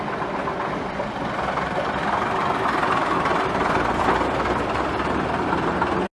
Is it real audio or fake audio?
real